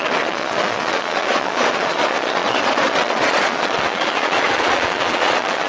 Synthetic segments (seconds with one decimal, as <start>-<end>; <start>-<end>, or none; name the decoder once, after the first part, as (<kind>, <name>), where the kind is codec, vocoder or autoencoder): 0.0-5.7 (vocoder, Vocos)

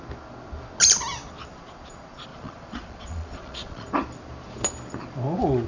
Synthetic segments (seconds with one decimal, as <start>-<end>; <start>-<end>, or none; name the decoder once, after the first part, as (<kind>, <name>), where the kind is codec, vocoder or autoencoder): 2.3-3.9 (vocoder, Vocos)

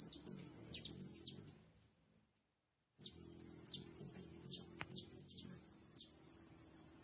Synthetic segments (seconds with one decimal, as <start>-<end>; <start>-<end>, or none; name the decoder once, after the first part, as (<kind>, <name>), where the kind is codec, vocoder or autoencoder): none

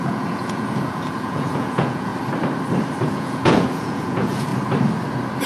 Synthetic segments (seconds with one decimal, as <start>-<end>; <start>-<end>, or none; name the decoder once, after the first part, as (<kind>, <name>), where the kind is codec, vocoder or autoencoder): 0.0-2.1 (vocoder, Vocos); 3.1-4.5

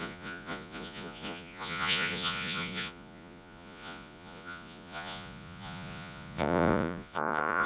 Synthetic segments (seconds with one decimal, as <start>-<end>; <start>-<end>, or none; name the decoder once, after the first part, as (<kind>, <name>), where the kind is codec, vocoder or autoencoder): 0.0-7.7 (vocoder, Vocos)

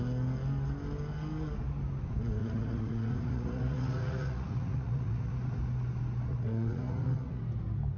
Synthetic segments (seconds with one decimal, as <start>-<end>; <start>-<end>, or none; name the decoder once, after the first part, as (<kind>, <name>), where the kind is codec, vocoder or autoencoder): 2.4-5.3 (vocoder, Vocos); 6.3-7.4